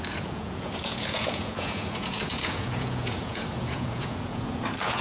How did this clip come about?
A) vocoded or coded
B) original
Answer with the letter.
A